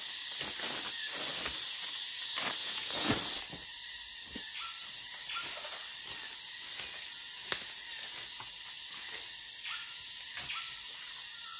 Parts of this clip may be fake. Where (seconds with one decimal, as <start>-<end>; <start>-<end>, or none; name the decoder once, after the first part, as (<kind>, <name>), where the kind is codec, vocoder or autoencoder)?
2.6-3.1 (vocoder, Vocos)